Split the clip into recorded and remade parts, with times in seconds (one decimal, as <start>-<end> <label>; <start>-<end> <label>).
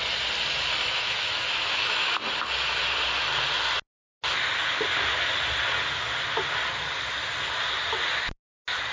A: 0.0-0.8 recorded; 0.8-2.2 remade; 2.2-8.9 recorded